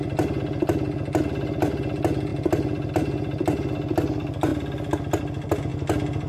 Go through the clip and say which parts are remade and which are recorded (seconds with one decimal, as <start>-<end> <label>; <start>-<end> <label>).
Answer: 0.0-6.3 recorded